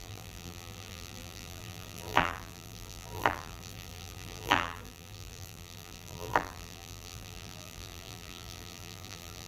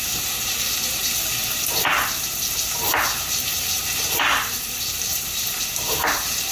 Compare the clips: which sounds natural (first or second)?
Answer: second